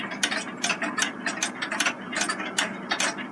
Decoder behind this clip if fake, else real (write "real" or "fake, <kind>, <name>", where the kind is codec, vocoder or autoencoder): real